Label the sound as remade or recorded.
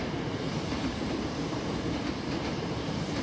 remade